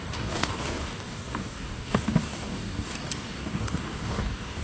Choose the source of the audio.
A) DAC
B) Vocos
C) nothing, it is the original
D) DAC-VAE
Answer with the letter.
A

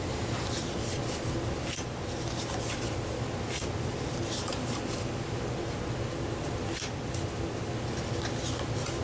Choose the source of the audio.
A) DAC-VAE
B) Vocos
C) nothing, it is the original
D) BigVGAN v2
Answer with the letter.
C